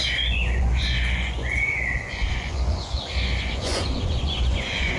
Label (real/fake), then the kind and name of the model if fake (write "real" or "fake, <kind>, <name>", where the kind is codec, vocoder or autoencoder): fake, vocoder, Vocos